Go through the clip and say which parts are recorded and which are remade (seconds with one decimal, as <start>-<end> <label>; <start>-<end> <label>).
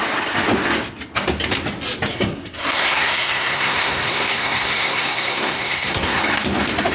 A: 0.0-2.1 recorded; 2.1-6.2 remade; 6.2-6.9 recorded